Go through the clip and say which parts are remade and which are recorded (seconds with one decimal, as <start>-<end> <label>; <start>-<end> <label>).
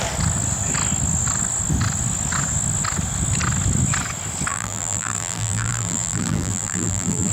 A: 0.0-4.5 recorded; 4.5-7.3 remade